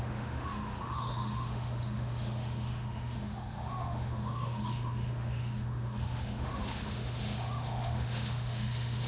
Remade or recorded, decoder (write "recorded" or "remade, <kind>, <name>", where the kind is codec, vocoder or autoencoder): remade, autoencoder, DAC-VAE